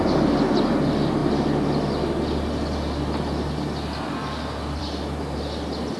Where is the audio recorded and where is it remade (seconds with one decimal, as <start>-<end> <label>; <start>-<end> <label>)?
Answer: 0.0-6.0 recorded